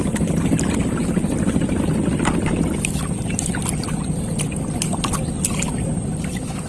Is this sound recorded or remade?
recorded